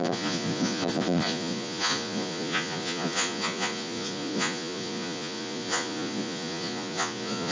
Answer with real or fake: fake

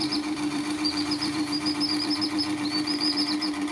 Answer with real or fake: fake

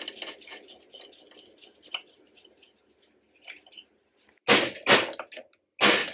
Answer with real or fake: real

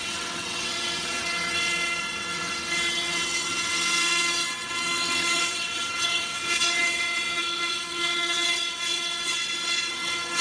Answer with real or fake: fake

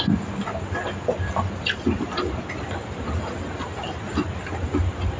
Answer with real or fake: real